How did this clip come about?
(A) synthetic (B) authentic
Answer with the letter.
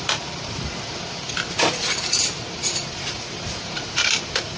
B